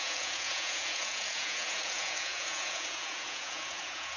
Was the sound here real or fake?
fake